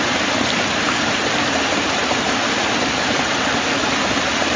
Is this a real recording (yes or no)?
yes